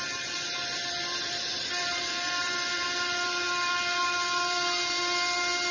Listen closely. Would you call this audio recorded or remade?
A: remade